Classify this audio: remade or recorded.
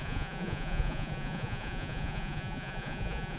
remade